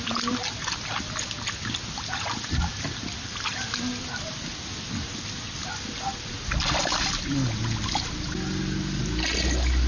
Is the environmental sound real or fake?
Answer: real